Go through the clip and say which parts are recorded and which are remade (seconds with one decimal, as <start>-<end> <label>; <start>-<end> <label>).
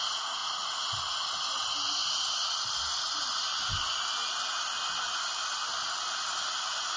0.0-7.0 recorded